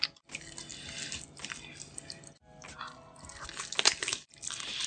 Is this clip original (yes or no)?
yes